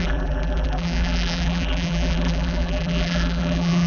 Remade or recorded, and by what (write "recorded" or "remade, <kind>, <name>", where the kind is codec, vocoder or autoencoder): remade, vocoder, BigVGAN v2